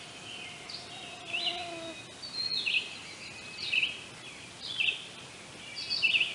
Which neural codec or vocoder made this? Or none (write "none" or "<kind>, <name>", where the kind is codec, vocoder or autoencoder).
none